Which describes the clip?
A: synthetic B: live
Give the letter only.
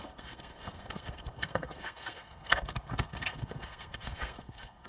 A